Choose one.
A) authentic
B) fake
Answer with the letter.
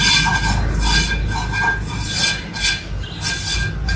A